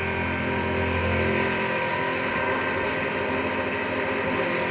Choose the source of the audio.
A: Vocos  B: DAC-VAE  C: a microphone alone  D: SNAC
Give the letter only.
C